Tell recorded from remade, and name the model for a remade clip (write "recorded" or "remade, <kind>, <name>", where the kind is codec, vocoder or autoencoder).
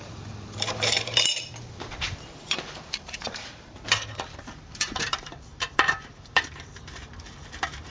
remade, vocoder, BigVGAN v2